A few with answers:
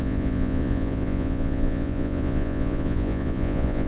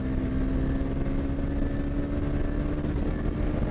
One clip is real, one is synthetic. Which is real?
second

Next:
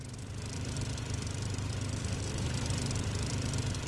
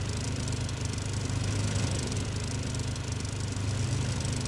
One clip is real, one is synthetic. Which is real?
second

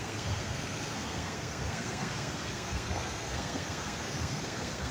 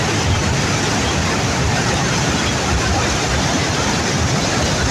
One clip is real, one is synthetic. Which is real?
second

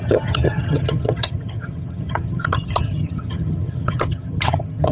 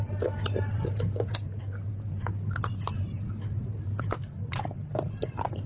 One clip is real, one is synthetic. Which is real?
second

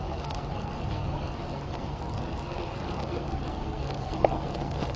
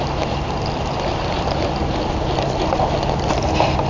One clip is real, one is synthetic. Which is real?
second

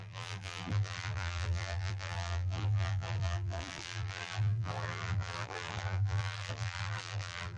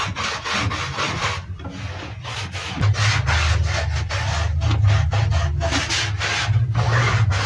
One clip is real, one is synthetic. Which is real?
second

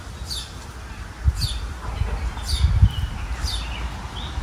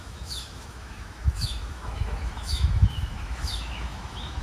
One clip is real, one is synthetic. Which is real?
first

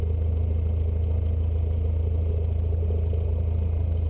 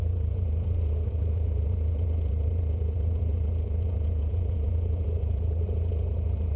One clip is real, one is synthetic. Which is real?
first